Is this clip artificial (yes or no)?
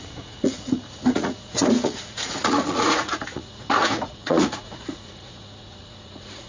yes